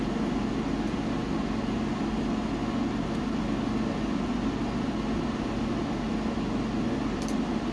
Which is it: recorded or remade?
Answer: recorded